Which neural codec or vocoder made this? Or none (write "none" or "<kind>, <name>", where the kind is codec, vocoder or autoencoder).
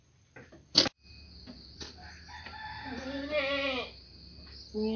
none